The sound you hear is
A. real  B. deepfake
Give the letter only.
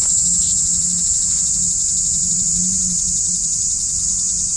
A